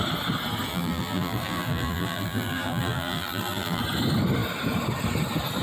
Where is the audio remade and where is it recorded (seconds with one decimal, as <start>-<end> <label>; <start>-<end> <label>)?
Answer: 0.0-0.7 recorded; 0.7-3.8 remade; 3.8-5.6 recorded